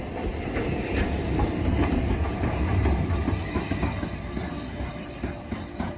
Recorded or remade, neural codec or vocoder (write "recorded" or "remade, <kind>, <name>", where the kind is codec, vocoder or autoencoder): recorded